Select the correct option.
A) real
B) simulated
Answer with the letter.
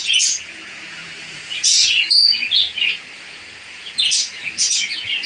B